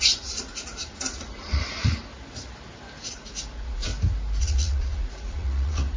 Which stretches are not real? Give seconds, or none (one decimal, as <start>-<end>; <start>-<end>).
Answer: 0.0-2.1; 3.1-3.9; 4.4-6.0